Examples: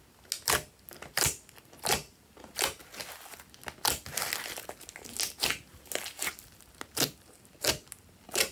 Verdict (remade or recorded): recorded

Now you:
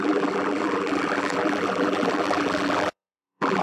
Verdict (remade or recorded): remade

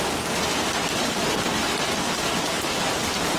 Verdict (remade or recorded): recorded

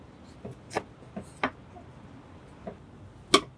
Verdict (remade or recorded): recorded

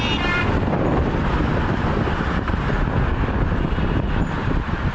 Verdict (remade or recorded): remade